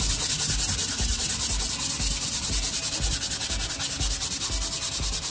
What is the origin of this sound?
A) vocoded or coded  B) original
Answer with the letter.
B